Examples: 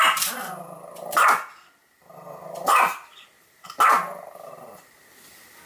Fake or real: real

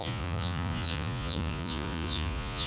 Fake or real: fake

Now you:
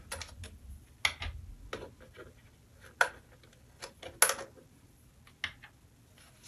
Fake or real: real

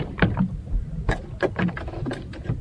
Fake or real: fake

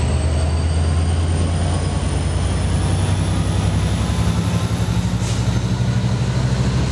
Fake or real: real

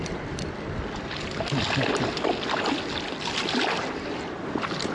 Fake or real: real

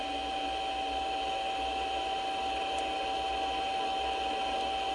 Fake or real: real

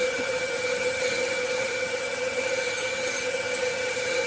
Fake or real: fake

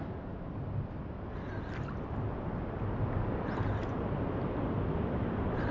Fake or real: real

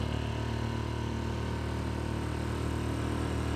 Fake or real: real